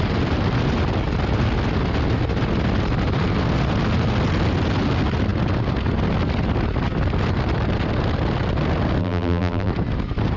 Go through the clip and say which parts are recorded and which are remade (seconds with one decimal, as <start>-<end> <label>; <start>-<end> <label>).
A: 0.0-9.0 recorded; 9.0-9.7 remade; 9.7-10.4 recorded